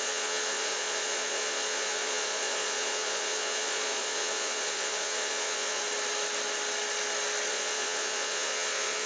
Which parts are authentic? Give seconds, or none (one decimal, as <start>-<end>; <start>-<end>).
5.8-7.5